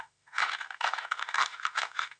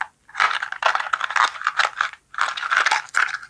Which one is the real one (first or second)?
second